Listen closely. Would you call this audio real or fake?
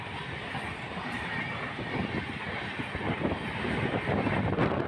fake